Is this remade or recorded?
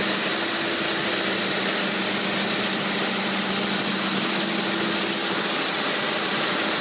recorded